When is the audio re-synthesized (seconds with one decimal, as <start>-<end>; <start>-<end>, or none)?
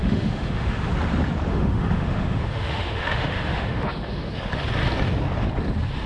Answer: 0.0-0.9; 1.5-4.3